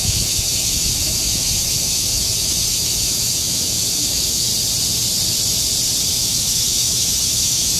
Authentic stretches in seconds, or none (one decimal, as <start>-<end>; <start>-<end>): 4.5-6.1